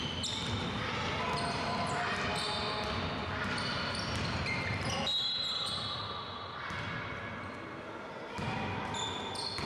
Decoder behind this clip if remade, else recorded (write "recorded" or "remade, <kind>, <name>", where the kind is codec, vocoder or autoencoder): recorded